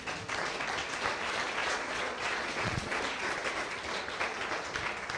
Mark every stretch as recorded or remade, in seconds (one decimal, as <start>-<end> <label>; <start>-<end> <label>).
0.0-1.6 recorded; 1.6-3.0 remade; 3.0-5.2 recorded